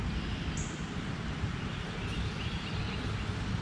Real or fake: real